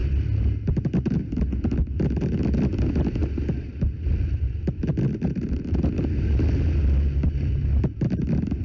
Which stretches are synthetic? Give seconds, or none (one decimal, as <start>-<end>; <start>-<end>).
none